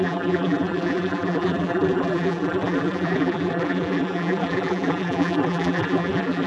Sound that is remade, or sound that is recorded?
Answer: remade